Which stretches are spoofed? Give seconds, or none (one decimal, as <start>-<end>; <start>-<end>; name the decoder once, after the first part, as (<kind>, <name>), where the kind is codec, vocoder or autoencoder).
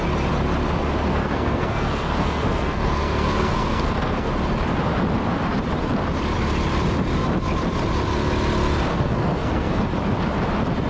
1.1-4.3 (codec, SNAC); 8.9-9.8